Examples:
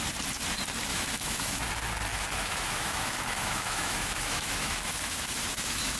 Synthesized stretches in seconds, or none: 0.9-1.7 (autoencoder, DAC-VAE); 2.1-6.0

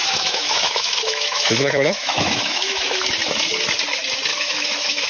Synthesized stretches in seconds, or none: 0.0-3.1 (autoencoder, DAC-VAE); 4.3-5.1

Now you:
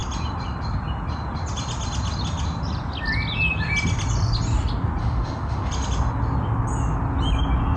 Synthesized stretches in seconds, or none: 5.0-5.7 (autoencoder, DAC-VAE)

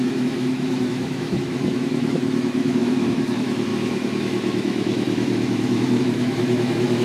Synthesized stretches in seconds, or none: 0.0-7.0 (autoencoder, DAC-VAE)

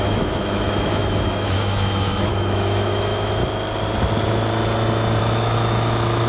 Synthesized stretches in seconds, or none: 0.0-3.4 (autoencoder, DAC-VAE); 5.2-6.3

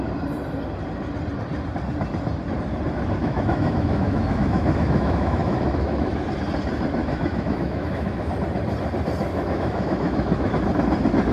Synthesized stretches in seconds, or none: 3.2-6.1 (autoencoder, DAC-VAE); 7.0-8.3; 9.3-10.5

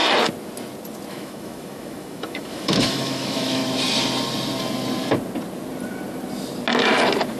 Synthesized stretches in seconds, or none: 1.1-3.6 (autoencoder, DAC-VAE)